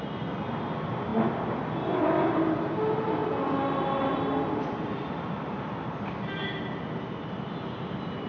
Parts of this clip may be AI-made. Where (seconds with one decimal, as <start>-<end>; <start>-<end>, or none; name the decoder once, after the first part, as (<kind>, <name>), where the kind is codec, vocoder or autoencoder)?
none